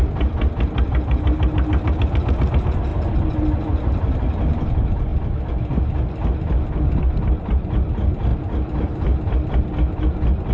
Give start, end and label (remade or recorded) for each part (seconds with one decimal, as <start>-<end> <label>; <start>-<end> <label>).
0.0-2.9 recorded; 2.9-4.6 remade; 4.6-8.3 recorded; 8.3-9.5 remade; 9.5-10.5 recorded

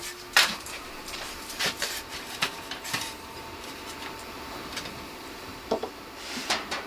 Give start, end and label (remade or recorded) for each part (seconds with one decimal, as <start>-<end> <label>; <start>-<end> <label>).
0.0-5.5 remade; 5.5-6.0 recorded; 6.0-6.9 remade

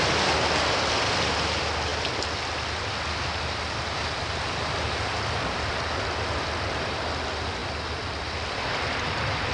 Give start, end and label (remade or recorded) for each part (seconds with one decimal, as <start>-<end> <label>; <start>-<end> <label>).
0.0-9.5 recorded

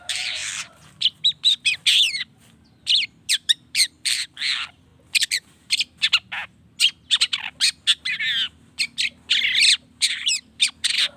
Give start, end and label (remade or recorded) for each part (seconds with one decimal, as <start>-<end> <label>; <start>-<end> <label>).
0.0-4.9 remade; 4.9-9.7 recorded; 9.7-11.2 remade

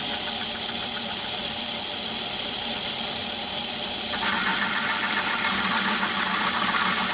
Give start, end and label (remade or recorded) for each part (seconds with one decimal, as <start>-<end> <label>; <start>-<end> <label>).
0.0-4.5 remade; 4.5-5.7 recorded; 5.7-7.1 remade

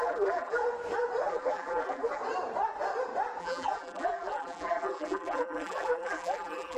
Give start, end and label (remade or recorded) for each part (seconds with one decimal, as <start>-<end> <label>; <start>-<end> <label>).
0.0-0.6 remade; 0.6-1.3 recorded; 1.3-2.2 remade; 2.2-3.4 recorded; 3.4-6.8 remade

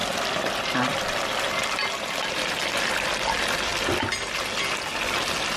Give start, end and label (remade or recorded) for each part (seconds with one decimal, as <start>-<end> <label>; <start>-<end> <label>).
0.0-5.6 recorded